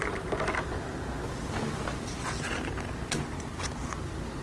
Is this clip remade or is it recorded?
recorded